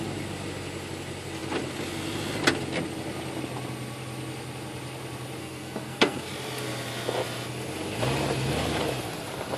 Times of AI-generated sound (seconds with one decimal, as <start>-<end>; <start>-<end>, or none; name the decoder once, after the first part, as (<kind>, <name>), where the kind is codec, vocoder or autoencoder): 5.4-6.3 (codec, SNAC)